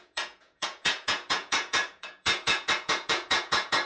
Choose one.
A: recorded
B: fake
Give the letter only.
B